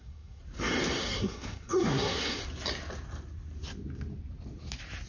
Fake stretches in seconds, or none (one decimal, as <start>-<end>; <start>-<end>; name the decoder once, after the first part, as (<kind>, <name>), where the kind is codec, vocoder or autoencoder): 0.0-0.4 (codec, SNAC); 1.0-2.4